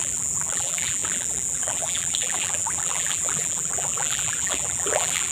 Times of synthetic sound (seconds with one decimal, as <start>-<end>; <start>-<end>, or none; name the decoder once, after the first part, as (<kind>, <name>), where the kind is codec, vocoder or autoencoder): 0.0-5.3 (vocoder, BigVGAN v2)